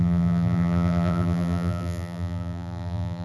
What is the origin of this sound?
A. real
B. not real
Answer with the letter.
B